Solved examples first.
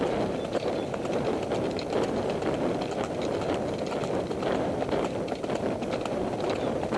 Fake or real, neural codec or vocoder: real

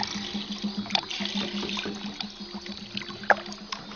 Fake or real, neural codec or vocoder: real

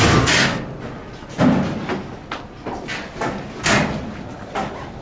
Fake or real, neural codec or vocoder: real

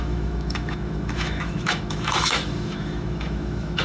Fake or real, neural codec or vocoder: fake, autoencoder, DAC-VAE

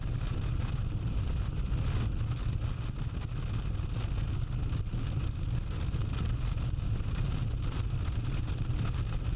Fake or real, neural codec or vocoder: real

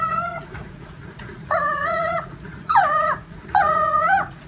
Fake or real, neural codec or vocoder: fake, vocoder, Vocos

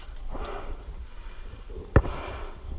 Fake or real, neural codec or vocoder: real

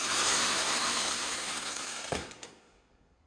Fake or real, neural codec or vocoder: fake, codec, SNAC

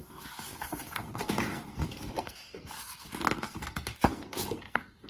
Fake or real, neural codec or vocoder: fake, codec, SNAC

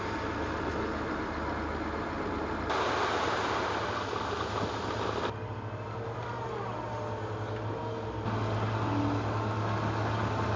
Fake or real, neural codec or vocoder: real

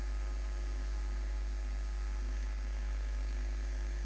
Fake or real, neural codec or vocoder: fake, codec, SNAC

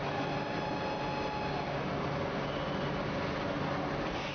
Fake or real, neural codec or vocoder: real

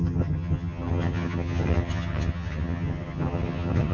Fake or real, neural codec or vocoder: fake, vocoder, HiFi-GAN